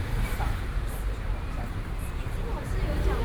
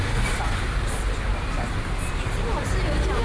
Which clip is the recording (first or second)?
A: second